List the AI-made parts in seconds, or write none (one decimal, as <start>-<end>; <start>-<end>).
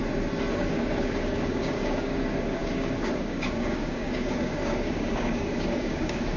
0.5-6.4